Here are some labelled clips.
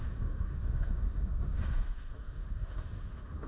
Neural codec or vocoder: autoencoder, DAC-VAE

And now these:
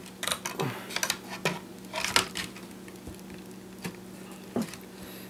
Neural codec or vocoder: none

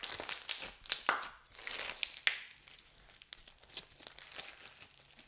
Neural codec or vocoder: none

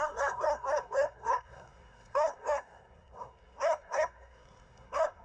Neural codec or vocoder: codec, SNAC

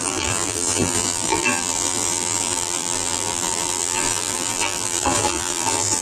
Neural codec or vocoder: vocoder, BigVGAN v2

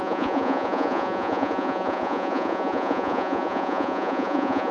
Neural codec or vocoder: vocoder, Vocos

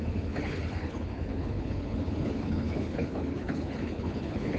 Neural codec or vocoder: codec, HILCodec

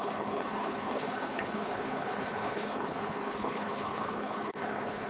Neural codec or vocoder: codec, HILCodec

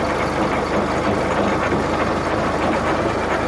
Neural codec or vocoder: none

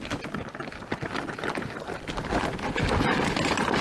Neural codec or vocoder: none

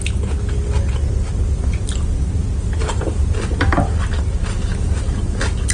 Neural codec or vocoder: none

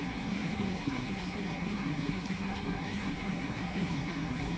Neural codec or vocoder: codec, SNAC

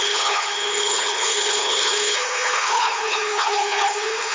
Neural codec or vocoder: codec, HILCodec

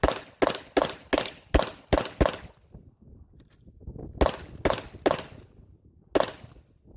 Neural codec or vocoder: none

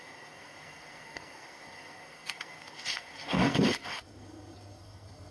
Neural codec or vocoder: codec, SNAC